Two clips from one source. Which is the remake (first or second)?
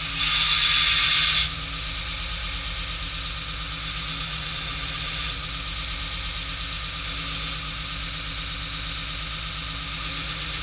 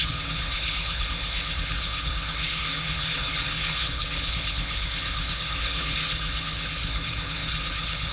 second